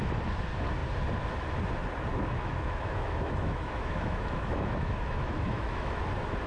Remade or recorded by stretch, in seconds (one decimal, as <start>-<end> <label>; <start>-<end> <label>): 0.0-2.1 recorded; 2.1-6.0 remade; 6.0-6.5 recorded